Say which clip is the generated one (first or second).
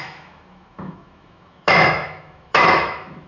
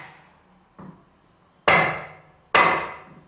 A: first